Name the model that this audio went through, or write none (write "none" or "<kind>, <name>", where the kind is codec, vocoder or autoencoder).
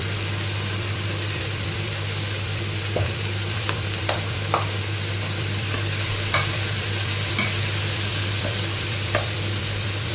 vocoder, BigVGAN v2